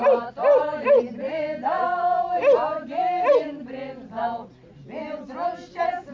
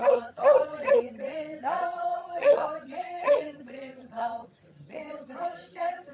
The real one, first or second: first